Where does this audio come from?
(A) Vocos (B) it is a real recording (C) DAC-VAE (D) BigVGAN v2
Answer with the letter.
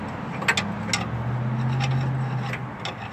B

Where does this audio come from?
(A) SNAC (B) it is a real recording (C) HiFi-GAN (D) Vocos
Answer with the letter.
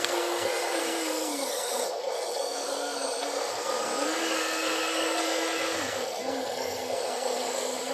A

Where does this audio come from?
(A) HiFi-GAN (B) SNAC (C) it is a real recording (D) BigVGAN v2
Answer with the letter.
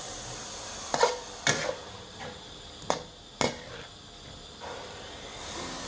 C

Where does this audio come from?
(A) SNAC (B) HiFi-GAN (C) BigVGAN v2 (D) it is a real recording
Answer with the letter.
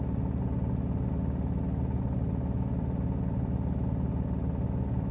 D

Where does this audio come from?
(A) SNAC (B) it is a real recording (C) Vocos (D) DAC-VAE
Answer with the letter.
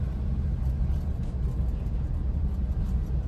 B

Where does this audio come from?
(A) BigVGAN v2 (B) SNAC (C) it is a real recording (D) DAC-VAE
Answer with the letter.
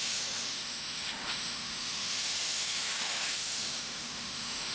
D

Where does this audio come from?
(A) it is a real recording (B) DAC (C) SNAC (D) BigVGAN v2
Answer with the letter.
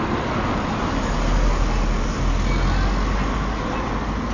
A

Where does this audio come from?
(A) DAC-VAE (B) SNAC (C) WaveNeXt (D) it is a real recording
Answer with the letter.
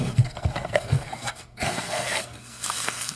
B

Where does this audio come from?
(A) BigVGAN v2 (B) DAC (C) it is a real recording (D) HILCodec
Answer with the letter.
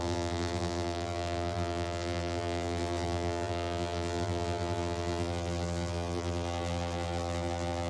A